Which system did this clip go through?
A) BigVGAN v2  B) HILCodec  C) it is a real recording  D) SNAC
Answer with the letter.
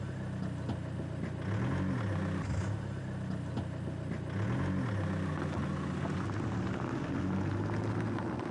C